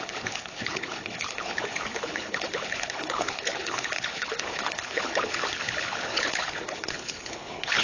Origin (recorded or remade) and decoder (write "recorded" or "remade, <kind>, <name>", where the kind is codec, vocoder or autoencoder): remade, codec, HILCodec